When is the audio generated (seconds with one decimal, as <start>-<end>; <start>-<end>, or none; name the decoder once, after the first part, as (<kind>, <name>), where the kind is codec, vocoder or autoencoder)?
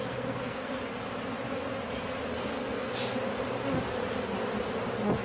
0.0-0.8 (codec, SNAC); 2.3-2.9